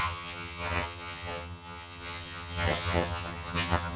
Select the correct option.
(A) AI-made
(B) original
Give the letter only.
A